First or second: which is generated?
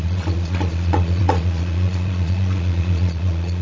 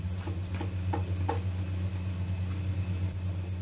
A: first